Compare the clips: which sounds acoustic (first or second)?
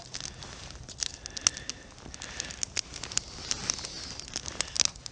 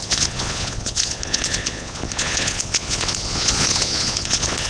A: first